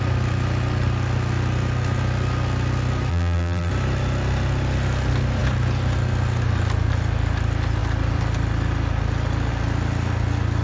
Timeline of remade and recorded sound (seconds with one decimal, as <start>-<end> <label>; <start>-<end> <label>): 0.0-3.1 recorded; 3.1-3.7 remade; 3.7-10.6 recorded